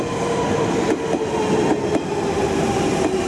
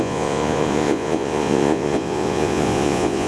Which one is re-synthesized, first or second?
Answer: second